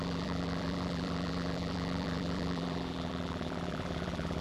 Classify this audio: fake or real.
fake